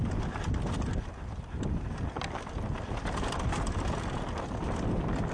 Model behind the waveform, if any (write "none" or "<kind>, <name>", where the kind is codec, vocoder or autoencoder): none